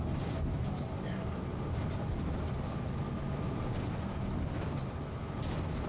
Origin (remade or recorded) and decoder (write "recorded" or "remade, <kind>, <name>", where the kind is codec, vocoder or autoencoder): recorded